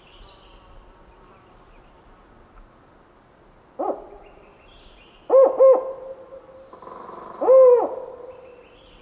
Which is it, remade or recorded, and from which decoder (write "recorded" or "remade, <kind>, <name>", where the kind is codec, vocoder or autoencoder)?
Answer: recorded